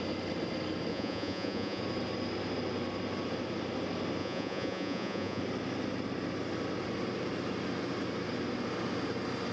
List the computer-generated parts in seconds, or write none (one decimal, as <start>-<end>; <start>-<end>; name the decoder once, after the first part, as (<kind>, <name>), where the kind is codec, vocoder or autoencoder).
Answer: 0.9-1.8 (vocoder, Vocos); 4.2-5.4